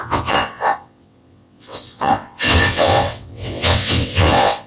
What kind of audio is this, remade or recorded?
remade